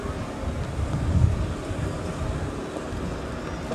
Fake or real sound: real